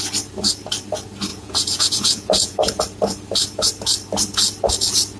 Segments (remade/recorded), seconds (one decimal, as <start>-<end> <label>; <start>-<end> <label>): 0.0-1.3 recorded; 1.3-2.8 remade; 2.8-5.2 recorded